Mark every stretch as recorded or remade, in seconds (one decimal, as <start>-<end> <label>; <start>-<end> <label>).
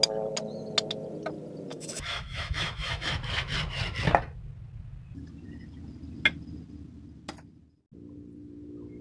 0.0-1.7 recorded; 1.7-3.1 remade; 3.1-9.0 recorded